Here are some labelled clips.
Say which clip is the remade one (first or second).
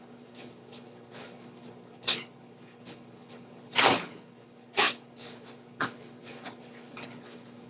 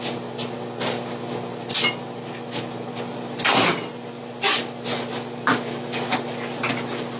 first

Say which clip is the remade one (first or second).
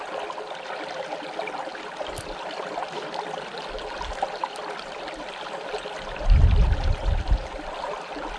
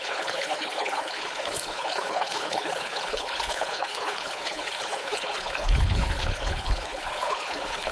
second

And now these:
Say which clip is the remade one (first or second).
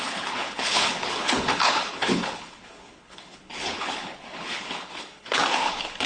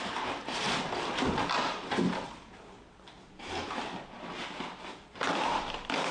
first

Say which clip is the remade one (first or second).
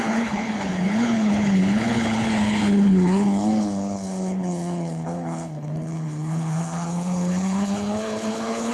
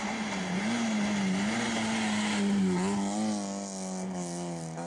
first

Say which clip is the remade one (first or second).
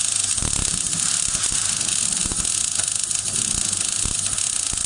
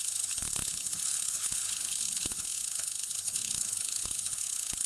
second